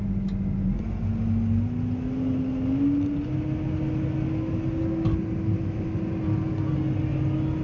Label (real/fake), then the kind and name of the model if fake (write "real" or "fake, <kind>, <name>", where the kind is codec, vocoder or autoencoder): real